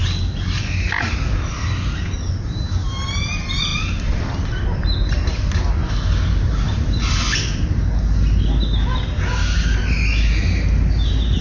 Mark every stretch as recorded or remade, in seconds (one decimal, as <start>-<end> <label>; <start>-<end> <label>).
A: 0.0-3.7 recorded; 3.7-7.1 remade; 7.1-11.4 recorded